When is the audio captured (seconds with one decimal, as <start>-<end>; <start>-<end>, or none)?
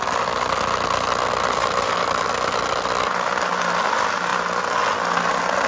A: 0.0-5.7